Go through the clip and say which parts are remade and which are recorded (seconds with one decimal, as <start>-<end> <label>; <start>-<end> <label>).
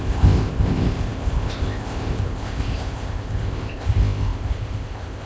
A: 0.0-5.3 remade